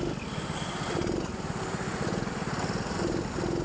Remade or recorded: recorded